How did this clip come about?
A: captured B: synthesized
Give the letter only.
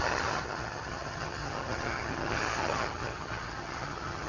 B